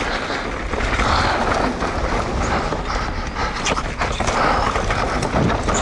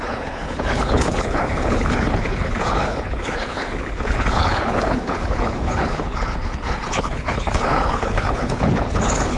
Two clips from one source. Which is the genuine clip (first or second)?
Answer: first